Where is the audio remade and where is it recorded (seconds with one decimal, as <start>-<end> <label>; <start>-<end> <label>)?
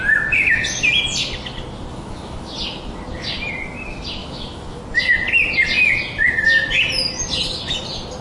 0.0-1.9 recorded; 1.9-2.5 remade; 2.5-4.2 recorded; 4.2-4.8 remade; 4.8-8.2 recorded